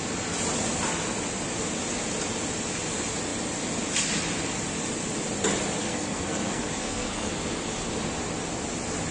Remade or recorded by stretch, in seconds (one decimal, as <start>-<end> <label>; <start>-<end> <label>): 0.0-5.8 recorded; 5.8-7.3 remade; 7.3-9.1 recorded